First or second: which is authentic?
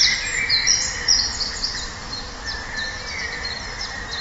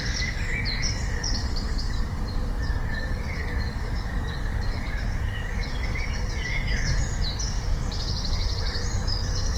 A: first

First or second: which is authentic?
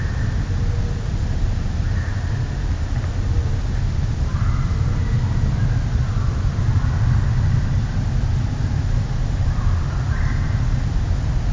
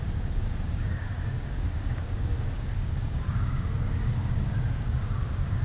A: first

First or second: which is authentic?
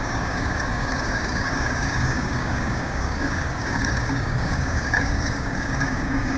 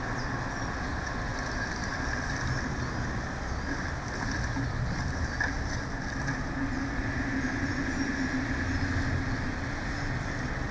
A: second